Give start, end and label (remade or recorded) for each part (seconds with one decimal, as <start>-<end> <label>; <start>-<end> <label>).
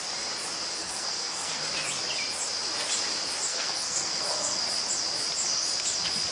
0.0-0.8 recorded; 0.8-1.6 remade; 1.6-3.5 recorded; 3.5-4.6 remade; 4.6-6.3 recorded